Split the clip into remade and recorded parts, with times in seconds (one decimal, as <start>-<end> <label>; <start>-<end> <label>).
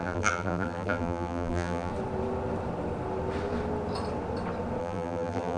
0.0-1.9 remade; 1.9-4.8 recorded; 4.8-5.6 remade